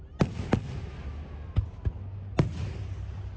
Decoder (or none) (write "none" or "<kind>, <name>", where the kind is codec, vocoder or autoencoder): none